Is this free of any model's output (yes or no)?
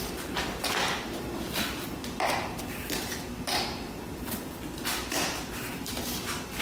no